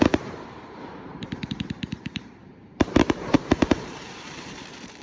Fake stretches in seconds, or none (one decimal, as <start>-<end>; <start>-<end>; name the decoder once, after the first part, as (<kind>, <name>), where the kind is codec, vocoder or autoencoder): 0.0-5.0 (vocoder, BigVGAN v2)